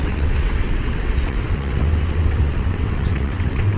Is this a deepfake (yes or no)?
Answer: yes